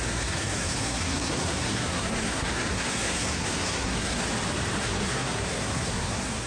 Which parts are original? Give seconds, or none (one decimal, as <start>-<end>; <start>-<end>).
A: 4.2-4.8